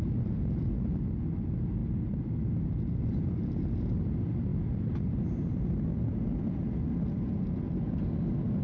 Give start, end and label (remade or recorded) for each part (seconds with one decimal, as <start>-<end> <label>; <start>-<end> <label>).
0.0-8.6 recorded